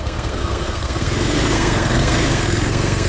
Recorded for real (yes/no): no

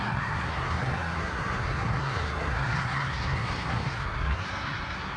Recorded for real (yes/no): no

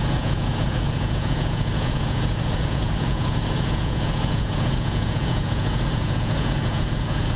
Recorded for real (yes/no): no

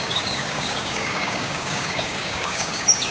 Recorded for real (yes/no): no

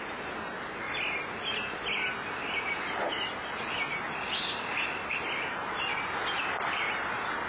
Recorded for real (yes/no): yes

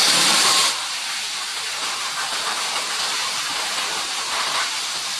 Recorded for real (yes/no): no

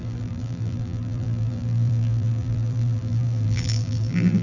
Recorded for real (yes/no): no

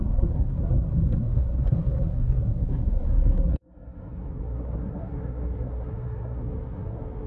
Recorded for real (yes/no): no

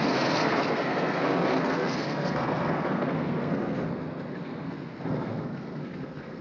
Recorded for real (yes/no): no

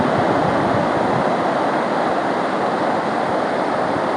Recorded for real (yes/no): yes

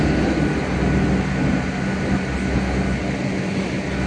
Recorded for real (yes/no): yes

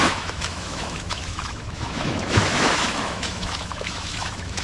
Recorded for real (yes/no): no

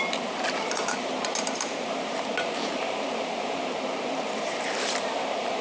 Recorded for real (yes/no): no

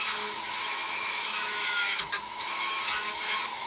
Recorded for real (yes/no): no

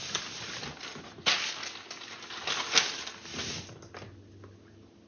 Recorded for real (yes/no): yes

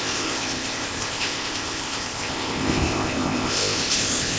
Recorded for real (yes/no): no